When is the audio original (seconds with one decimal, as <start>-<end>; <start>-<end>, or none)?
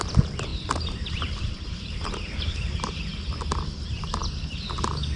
0.0-0.5; 3.1-5.2